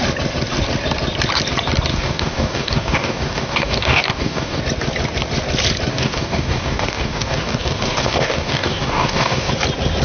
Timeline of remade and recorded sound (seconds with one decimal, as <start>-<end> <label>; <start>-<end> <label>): 0.0-1.9 recorded; 1.9-4.6 remade; 4.6-5.9 recorded; 5.9-9.5 remade; 9.5-10.0 recorded

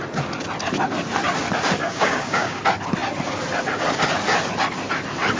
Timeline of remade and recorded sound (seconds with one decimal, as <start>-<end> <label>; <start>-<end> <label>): 0.0-1.8 recorded; 1.8-2.6 remade; 2.6-5.4 recorded

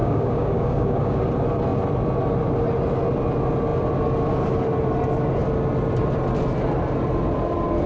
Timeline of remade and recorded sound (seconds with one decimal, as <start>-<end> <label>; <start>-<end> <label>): 0.0-1.2 remade; 1.2-7.9 recorded

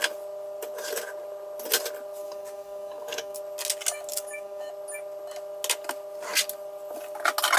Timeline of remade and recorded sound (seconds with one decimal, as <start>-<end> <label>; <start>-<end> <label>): 0.0-2.2 recorded; 2.2-3.4 remade; 3.4-4.1 recorded; 4.1-4.7 remade; 4.7-7.6 recorded

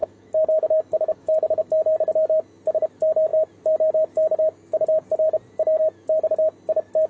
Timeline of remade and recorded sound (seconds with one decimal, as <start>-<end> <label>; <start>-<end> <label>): 0.0-1.7 remade; 1.7-7.1 recorded